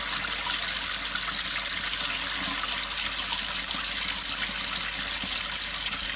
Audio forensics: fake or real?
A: real